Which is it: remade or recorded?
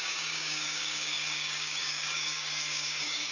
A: remade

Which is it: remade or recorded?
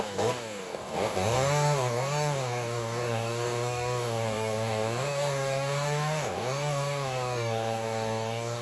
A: remade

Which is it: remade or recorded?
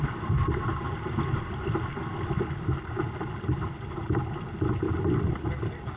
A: recorded